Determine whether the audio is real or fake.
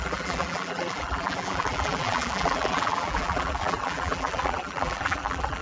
fake